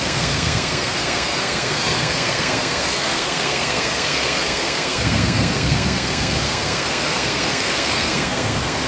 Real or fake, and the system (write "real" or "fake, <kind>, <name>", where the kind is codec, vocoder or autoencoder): fake, codec, SNAC